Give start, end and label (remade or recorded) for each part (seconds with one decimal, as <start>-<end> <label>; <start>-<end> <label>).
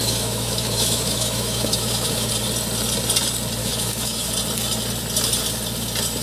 0.0-2.3 remade; 2.3-3.6 recorded; 3.6-4.3 remade; 4.3-6.2 recorded